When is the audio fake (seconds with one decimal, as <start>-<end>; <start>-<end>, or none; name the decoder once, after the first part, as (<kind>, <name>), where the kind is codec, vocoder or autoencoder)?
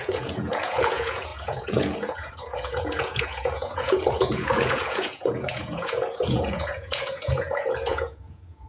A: 0.0-8.7 (vocoder, Vocos)